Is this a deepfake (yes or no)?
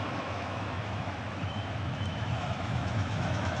yes